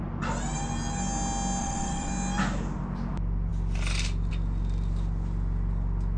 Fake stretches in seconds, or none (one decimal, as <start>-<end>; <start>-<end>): 1.6-2.1